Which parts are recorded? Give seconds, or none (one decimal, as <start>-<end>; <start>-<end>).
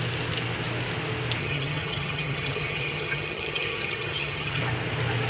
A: 0.0-1.4; 4.6-5.3